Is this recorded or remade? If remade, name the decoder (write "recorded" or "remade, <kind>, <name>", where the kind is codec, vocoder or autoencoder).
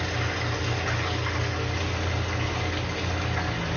recorded